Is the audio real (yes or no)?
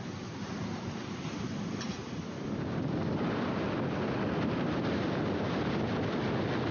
yes